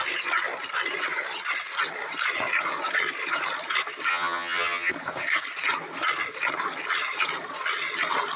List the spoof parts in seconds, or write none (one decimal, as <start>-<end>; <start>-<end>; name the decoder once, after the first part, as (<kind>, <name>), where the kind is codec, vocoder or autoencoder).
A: 4.1-4.9 (vocoder, HiFi-GAN)